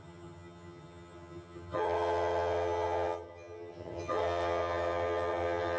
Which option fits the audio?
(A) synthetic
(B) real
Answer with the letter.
A